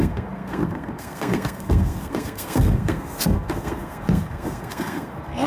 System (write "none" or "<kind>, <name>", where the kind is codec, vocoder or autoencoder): codec, SNAC